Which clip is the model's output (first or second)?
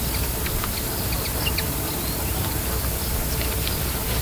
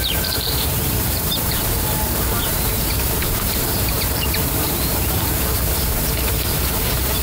second